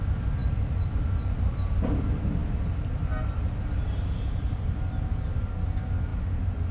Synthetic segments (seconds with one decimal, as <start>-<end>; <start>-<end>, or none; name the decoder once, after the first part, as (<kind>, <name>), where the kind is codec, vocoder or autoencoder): none